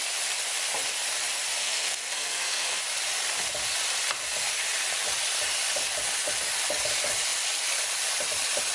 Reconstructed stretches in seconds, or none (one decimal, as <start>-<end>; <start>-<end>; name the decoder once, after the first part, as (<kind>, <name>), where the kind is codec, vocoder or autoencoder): 1.6-2.8 (codec, SNAC)